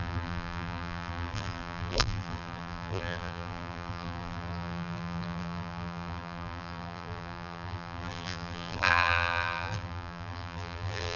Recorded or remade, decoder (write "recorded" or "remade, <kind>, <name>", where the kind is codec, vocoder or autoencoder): remade, vocoder, BigVGAN v2